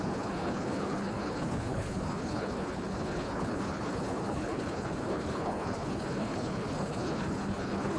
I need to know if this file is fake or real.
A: fake